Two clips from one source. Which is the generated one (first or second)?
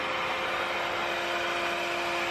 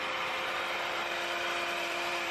second